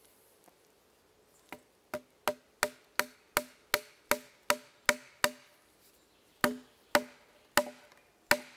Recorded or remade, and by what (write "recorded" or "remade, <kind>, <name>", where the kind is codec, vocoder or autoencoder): recorded